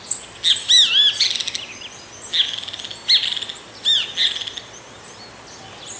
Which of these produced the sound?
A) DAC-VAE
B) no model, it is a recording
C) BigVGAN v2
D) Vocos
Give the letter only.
B